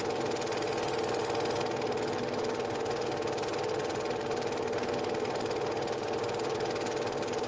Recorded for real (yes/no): yes